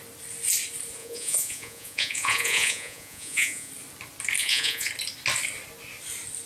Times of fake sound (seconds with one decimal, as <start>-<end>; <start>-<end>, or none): 1.0-3.7; 4.4-4.9